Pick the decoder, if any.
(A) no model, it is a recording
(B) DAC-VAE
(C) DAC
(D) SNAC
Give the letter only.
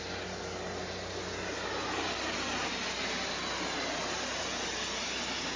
A